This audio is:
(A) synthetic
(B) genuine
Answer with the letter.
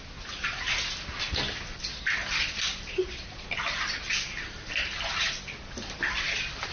B